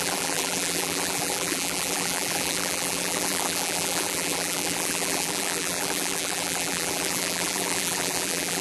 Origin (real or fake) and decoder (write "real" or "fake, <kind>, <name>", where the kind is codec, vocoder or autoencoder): fake, vocoder, BigVGAN v2